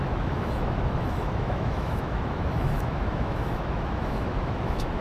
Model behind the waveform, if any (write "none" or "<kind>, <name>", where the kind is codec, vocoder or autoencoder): autoencoder, DAC-VAE